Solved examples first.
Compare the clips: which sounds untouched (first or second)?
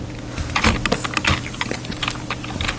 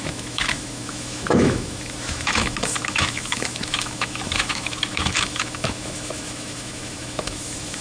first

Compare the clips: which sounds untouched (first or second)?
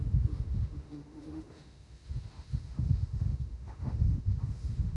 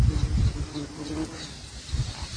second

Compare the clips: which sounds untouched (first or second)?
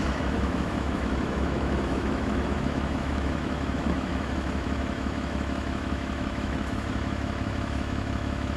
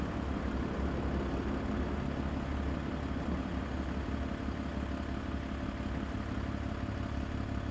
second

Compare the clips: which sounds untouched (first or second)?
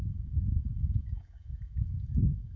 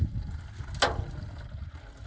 second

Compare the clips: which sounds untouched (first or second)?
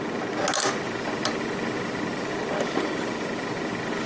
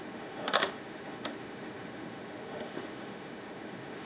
first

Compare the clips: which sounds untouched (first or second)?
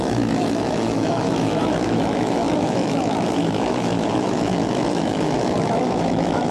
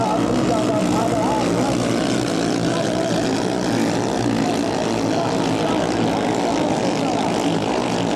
second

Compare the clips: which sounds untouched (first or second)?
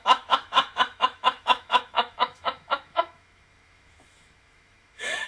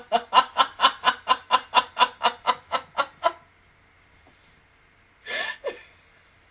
second